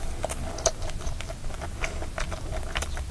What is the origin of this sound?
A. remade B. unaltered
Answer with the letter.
B